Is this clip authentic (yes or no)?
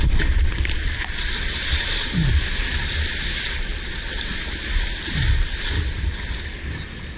yes